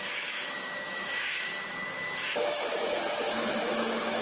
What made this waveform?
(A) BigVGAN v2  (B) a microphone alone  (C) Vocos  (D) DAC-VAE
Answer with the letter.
D